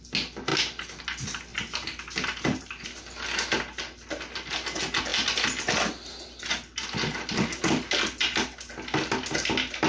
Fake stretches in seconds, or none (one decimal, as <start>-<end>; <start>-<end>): none